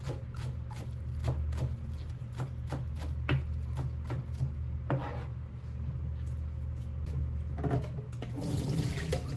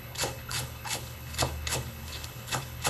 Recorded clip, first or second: first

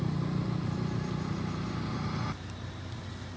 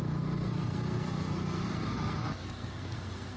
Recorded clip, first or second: first